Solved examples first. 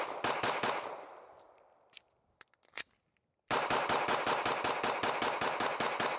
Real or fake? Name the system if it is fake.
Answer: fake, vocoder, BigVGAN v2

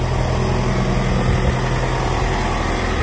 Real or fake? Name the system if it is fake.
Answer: real